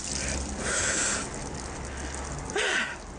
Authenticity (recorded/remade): recorded